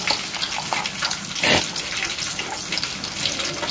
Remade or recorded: recorded